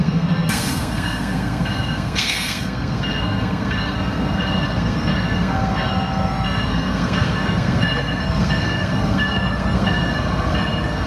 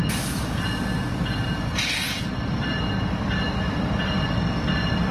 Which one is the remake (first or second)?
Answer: first